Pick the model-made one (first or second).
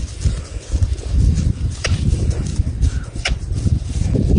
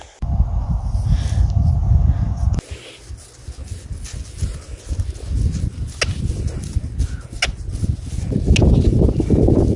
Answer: first